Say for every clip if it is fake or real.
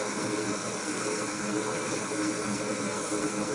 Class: fake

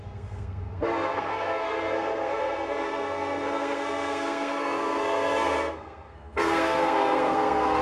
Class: fake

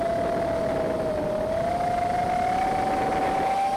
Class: real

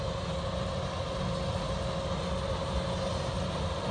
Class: real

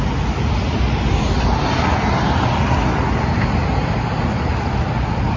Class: real